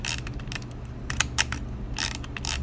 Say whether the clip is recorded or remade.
recorded